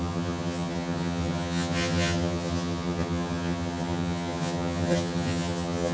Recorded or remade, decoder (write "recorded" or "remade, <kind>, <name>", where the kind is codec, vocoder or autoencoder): remade, vocoder, HiFi-GAN